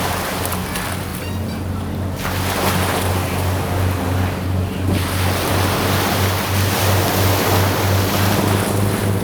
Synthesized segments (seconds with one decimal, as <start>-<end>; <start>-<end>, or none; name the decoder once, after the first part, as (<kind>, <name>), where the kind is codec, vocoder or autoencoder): none